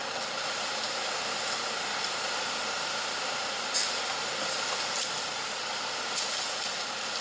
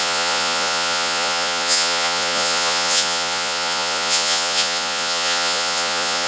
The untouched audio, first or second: first